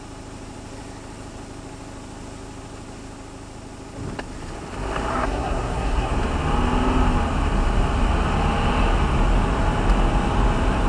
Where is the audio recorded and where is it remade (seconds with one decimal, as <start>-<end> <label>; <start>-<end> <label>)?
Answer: 0.0-5.1 recorded; 5.1-6.1 remade; 6.1-10.9 recorded